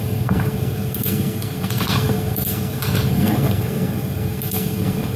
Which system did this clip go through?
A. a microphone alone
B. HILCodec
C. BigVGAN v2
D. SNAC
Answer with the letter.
D